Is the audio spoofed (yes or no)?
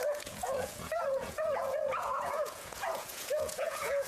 yes